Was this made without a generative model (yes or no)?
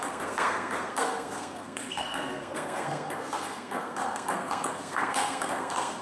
no